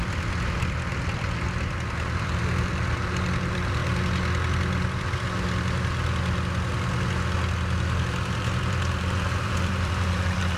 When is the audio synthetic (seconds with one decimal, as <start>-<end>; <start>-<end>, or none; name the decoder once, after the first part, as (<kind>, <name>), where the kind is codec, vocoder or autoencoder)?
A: 0.0-3.8 (vocoder, BigVGAN v2); 8.0-10.6